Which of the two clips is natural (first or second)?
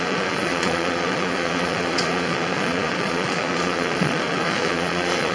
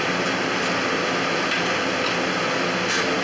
second